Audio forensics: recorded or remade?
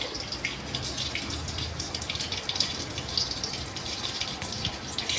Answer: recorded